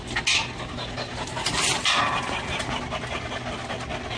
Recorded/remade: recorded